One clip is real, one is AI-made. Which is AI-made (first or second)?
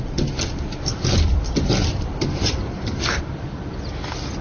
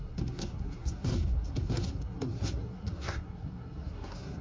second